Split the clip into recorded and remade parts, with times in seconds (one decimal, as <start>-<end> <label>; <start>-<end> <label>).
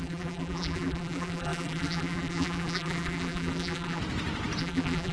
0.0-4.0 remade; 4.0-4.6 recorded; 4.6-5.1 remade